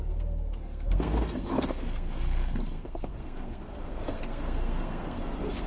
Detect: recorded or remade remade